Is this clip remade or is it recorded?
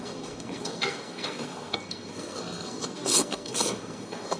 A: remade